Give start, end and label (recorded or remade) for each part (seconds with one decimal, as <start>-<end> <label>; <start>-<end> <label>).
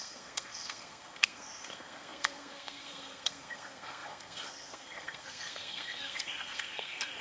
0.0-7.2 remade